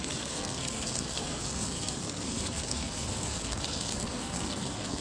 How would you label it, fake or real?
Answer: fake